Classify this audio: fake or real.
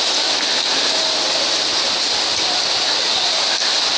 real